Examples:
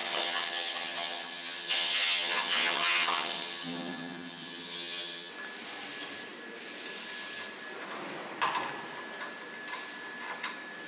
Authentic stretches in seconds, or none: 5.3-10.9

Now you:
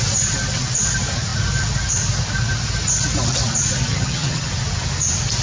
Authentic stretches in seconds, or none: 0.0-3.9; 4.5-5.4

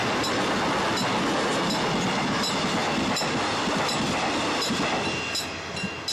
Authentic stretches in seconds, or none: 0.0-6.1